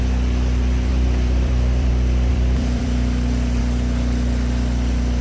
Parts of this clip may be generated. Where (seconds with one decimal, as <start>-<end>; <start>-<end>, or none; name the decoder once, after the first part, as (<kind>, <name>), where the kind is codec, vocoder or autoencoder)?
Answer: 0.9-1.9 (vocoder, BigVGAN v2); 2.3-3.6